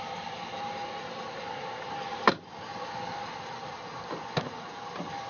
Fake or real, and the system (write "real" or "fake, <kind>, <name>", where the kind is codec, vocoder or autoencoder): real